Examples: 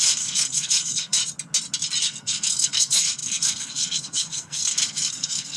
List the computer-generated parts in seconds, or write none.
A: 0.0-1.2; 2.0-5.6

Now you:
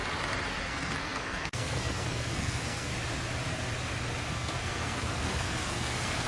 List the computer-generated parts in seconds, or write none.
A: 0.6-2.9; 4.3-6.3

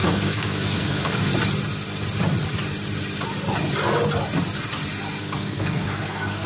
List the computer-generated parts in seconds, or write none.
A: 0.0-1.3; 5.2-6.5

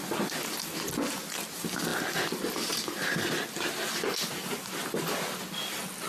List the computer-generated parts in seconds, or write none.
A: none

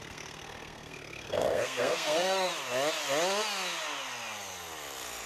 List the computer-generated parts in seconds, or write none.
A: 0.0-2.5

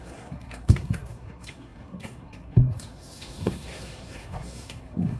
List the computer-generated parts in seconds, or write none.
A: 0.0-5.2

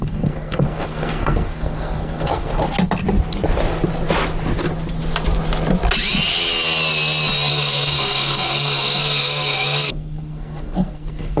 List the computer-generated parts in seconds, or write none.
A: 0.0-2.6; 7.5-11.4

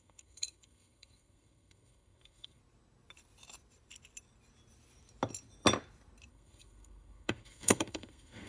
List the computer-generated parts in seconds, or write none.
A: 0.0-2.6; 6.3-8.5